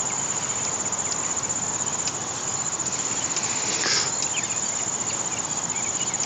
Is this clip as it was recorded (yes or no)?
yes